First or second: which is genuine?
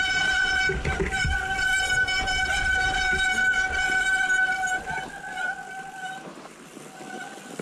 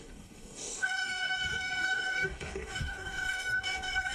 first